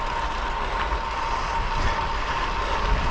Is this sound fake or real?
real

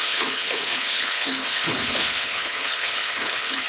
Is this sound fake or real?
fake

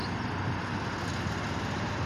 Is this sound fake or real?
real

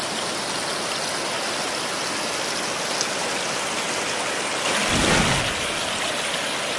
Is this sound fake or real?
real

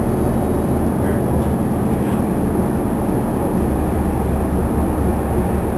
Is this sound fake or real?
real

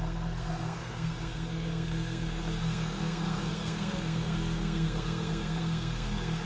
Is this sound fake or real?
fake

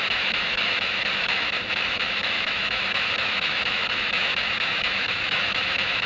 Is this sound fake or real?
fake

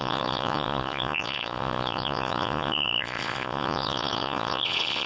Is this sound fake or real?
fake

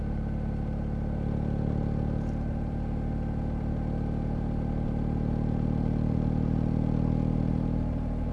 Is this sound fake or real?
real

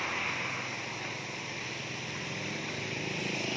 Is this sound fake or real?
real